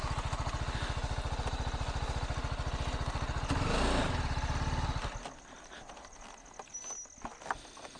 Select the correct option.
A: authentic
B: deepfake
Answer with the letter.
A